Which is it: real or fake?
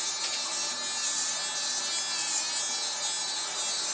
real